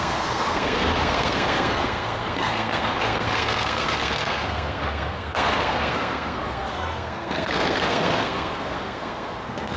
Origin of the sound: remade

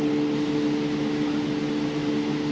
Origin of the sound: recorded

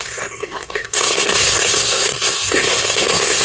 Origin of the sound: remade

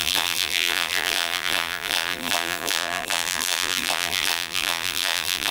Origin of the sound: remade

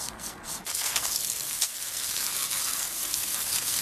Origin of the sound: remade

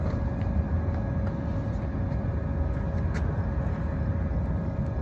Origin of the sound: recorded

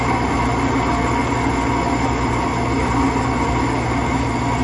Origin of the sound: recorded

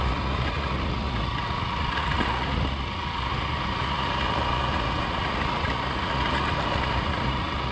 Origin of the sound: remade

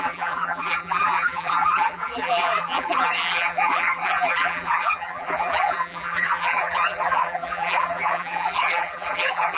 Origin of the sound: remade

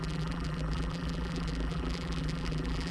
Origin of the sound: remade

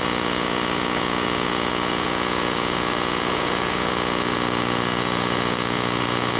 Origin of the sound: remade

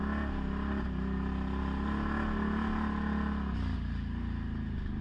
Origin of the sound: recorded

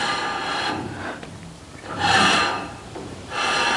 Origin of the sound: remade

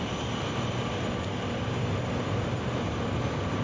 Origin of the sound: recorded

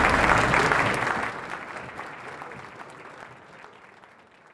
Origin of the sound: recorded